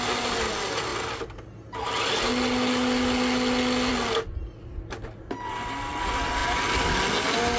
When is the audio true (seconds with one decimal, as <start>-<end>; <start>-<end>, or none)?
0.0-7.6